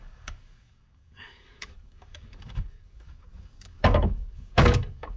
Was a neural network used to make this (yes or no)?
yes